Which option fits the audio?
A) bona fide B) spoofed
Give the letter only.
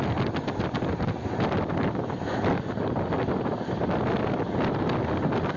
A